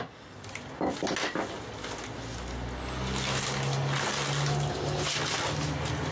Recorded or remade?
recorded